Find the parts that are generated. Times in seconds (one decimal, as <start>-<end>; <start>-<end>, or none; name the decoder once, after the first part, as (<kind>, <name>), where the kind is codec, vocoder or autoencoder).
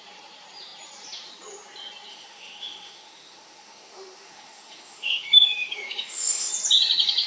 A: 2.1-6.5 (autoencoder, DAC-VAE)